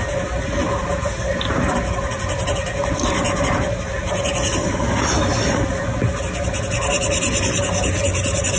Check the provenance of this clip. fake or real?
real